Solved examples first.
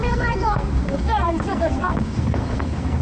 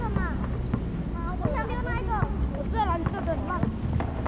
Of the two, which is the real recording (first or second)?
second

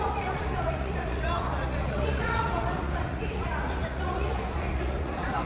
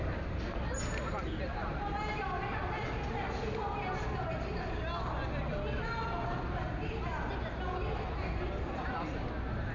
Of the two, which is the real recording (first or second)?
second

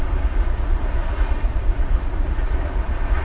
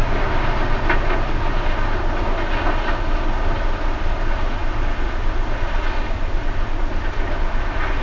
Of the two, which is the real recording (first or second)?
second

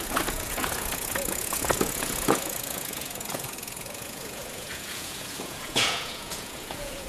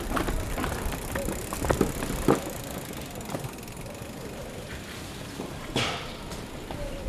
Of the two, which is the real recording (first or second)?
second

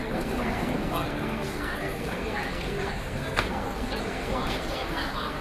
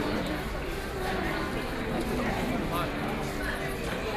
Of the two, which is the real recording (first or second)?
second